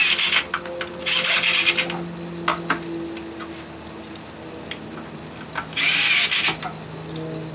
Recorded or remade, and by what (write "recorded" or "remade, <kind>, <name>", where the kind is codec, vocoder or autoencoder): recorded